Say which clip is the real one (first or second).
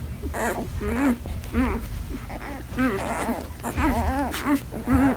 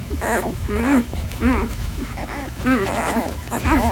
first